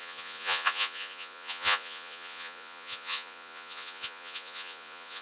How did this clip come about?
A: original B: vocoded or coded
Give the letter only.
B